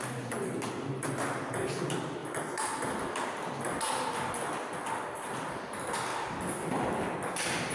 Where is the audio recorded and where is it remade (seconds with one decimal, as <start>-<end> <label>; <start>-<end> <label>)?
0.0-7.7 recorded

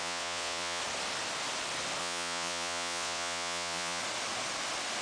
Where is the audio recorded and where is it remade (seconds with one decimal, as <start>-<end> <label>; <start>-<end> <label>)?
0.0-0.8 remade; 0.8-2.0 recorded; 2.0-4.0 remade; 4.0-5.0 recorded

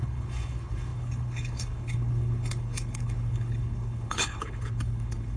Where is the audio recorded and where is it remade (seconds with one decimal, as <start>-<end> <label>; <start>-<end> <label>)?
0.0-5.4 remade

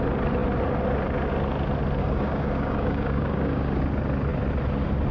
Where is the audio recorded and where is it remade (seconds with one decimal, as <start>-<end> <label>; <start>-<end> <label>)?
0.0-2.0 recorded; 2.0-3.8 remade; 3.8-5.1 recorded

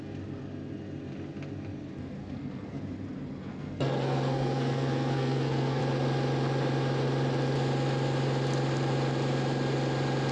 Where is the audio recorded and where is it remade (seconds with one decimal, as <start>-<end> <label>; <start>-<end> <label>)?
0.0-2.2 recorded; 2.2-2.8 remade; 2.8-3.5 recorded; 3.5-5.8 remade; 5.8-10.3 recorded